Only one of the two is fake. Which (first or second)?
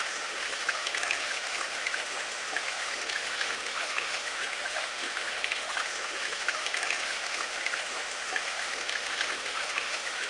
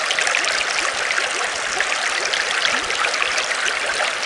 first